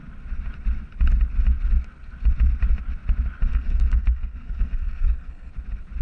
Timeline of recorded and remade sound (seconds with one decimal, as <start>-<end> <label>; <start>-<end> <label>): 0.0-3.5 recorded; 3.5-5.5 remade; 5.5-6.0 recorded